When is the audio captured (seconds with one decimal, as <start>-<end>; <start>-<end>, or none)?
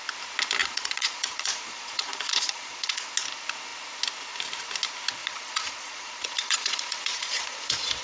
0.0-0.6; 3.1-5.2